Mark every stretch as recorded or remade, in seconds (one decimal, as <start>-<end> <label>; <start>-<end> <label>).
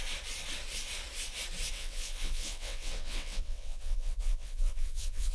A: 0.0-1.7 recorded; 1.7-5.3 remade